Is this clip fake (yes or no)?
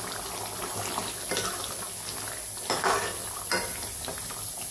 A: no